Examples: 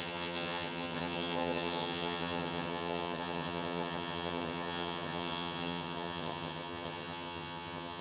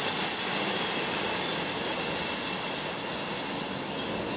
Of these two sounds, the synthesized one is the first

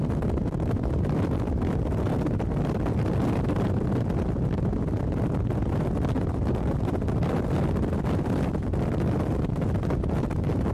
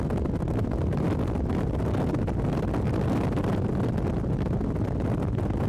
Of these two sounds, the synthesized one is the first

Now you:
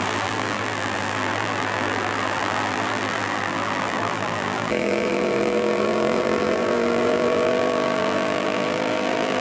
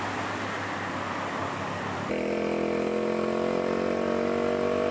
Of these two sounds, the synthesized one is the first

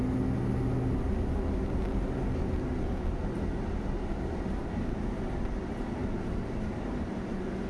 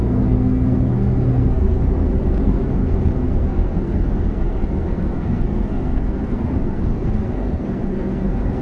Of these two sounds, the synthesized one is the second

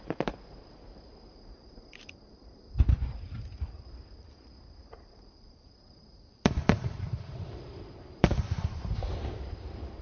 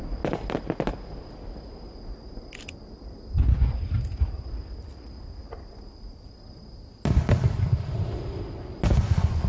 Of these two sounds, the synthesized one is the first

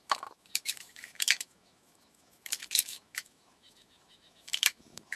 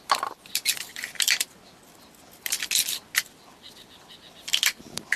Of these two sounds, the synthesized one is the first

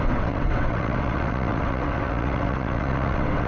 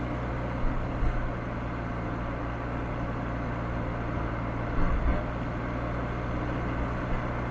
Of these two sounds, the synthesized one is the first